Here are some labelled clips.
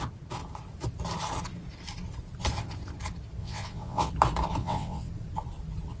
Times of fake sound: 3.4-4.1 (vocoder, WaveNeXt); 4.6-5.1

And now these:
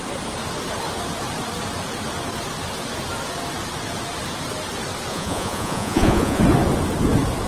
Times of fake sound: 5.1-6.4 (vocoder, Vocos)

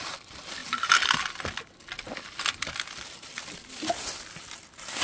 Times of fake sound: none